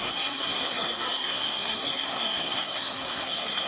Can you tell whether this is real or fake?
fake